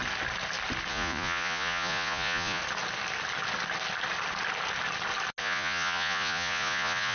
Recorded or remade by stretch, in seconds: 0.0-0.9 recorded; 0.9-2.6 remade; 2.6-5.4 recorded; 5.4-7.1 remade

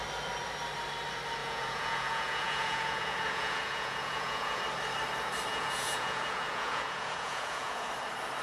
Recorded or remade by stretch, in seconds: 0.0-1.4 recorded; 1.4-4.6 remade; 4.6-5.5 recorded; 5.5-7.9 remade; 7.9-8.4 recorded

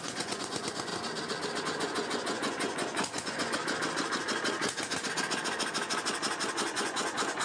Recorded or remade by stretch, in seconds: 0.0-0.9 remade; 0.9-1.6 recorded; 1.6-3.6 remade; 3.6-6.5 recorded; 6.5-7.4 remade

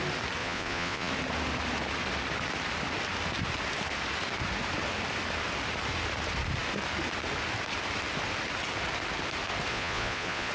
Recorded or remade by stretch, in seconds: 0.0-0.4 recorded; 0.4-1.1 remade; 1.1-9.7 recorded; 9.7-10.5 remade

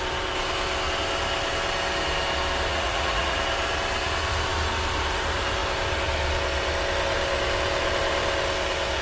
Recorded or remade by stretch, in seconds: 0.0-2.7 recorded; 2.7-3.4 remade; 3.4-9.0 recorded

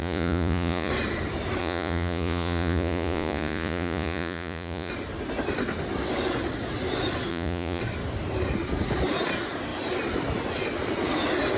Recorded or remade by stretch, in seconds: 0.0-0.9 remade; 0.9-1.6 recorded; 1.6-4.9 remade; 4.9-7.3 recorded; 7.3-7.8 remade; 7.8-11.6 recorded

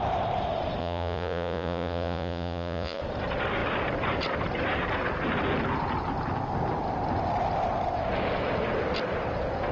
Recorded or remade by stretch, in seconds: 0.0-0.8 recorded; 0.8-3.0 remade; 3.0-9.7 recorded